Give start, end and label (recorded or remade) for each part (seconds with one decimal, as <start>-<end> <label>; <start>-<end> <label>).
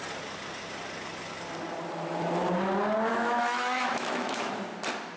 0.0-3.1 recorded; 3.1-4.5 remade; 4.5-5.2 recorded